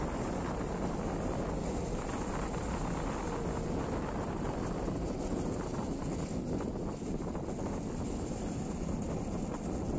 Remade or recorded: recorded